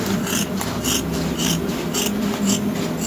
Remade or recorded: recorded